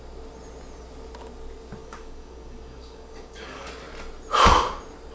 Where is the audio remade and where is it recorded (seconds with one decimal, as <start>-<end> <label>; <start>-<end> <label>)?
0.0-1.8 recorded; 1.8-3.7 remade; 3.7-5.1 recorded